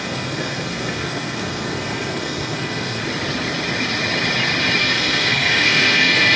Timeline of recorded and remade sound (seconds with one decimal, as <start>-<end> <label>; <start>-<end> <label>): 0.0-3.0 remade; 3.0-4.8 recorded; 4.8-6.4 remade